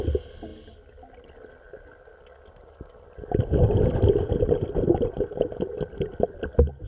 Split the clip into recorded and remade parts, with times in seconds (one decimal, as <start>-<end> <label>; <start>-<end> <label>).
0.0-6.9 recorded

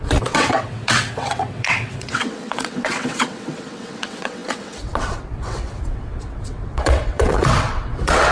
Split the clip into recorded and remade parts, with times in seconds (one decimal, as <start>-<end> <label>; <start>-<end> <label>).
0.0-8.3 remade

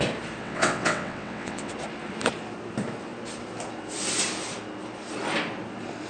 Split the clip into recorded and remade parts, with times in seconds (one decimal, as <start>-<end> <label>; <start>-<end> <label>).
0.0-0.4 recorded; 0.4-1.7 remade; 1.7-6.1 recorded

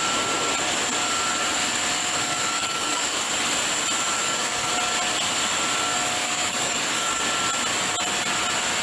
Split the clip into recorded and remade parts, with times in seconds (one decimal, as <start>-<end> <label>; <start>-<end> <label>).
0.0-2.0 recorded; 2.0-3.3 remade; 3.3-4.2 recorded; 4.2-4.7 remade; 4.7-6.2 recorded; 6.2-7.2 remade; 7.2-8.8 recorded

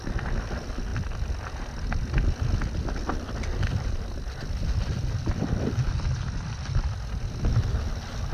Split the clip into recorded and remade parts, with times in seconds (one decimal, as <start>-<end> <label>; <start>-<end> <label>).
0.0-8.3 recorded

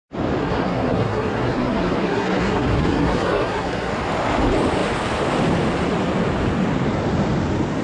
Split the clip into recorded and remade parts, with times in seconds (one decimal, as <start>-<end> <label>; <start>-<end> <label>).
0.0-0.4 recorded; 0.4-3.9 remade; 3.9-7.8 recorded

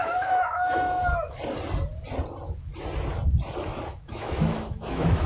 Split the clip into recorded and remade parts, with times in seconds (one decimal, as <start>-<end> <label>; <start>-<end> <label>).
0.0-1.4 remade; 1.4-3.9 recorded; 3.9-5.3 remade